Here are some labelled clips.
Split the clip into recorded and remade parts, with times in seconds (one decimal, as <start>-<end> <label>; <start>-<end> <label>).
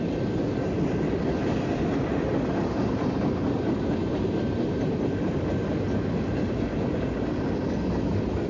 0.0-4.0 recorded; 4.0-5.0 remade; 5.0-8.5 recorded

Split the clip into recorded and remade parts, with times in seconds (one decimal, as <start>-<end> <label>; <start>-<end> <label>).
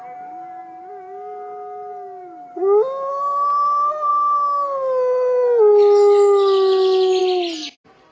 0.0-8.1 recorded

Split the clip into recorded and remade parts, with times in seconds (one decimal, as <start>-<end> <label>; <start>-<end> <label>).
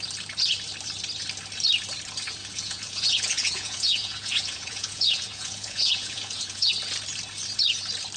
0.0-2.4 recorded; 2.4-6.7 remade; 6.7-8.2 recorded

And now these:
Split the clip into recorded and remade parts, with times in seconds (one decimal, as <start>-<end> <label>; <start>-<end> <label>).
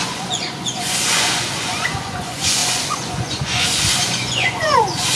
0.0-5.2 remade